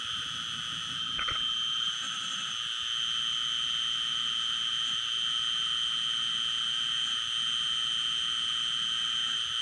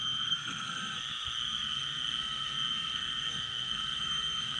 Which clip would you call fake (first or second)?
second